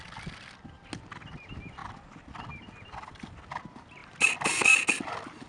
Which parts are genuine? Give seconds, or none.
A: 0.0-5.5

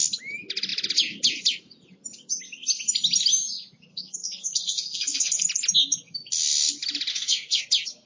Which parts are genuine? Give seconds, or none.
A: 0.0-3.9; 5.4-7.1; 7.6-8.1

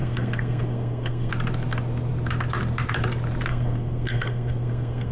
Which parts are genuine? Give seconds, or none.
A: 1.3-3.5

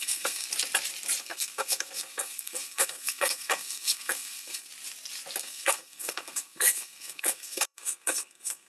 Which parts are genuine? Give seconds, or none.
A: 0.5-1.2; 4.7-5.4

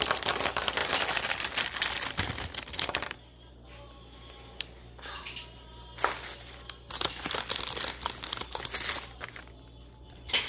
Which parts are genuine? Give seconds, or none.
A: 0.0-10.5

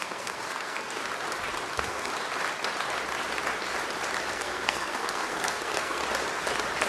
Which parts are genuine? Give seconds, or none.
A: 1.0-1.7; 2.1-4.3; 6.0-6.9